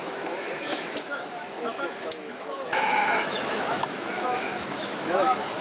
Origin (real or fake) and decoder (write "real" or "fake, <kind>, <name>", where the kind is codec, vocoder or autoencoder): fake, autoencoder, DAC-VAE